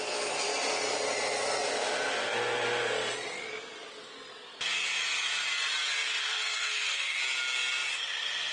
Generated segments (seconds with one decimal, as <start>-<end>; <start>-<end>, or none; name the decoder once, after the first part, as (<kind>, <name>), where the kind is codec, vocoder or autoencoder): 6.2-7.2 (codec, SNAC)